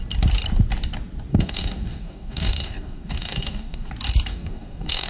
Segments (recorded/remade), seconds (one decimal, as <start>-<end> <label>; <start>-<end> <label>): 0.0-1.3 recorded; 1.3-3.9 remade; 3.9-4.3 recorded; 4.3-5.1 remade